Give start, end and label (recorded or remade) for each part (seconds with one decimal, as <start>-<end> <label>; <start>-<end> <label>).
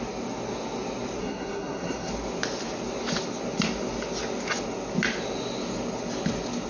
0.0-1.2 recorded; 1.2-2.1 remade; 2.1-6.7 recorded